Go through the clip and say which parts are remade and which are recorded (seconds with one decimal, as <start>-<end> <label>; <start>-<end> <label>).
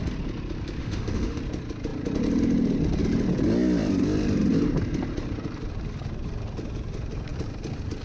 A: 0.0-0.8 recorded; 0.8-1.4 remade; 1.4-8.0 recorded